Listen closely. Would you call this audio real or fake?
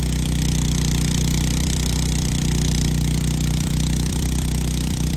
fake